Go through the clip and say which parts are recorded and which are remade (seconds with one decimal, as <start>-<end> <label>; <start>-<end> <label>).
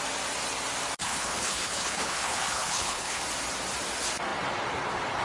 0.0-1.0 recorded; 1.0-3.2 remade; 3.2-5.2 recorded